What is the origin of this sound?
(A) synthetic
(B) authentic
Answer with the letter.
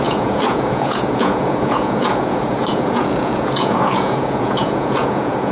A